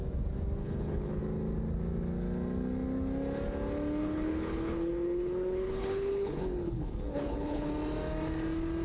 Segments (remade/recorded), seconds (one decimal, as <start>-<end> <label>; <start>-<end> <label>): 0.0-0.6 recorded; 0.6-1.2 remade; 1.2-4.0 recorded; 4.0-7.7 remade; 7.7-8.8 recorded